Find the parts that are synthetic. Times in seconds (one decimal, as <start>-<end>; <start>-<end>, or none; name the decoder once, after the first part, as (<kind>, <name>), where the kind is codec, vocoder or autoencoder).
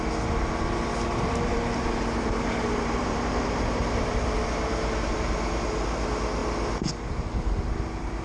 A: 1.1-4.2 (vocoder, BigVGAN v2)